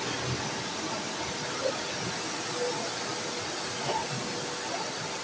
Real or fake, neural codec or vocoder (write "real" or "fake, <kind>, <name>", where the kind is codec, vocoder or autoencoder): real